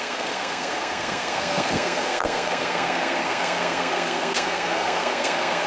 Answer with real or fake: fake